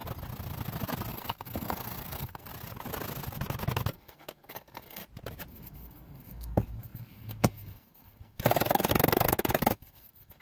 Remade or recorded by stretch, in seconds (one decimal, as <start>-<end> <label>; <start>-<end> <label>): 0.0-1.1 recorded; 1.1-2.5 remade; 2.5-3.9 recorded; 3.9-5.0 remade; 5.0-5.5 recorded; 5.5-10.4 remade